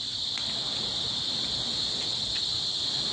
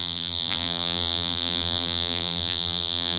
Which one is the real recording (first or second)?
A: first